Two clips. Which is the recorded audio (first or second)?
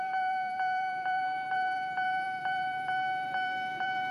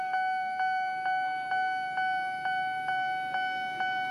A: second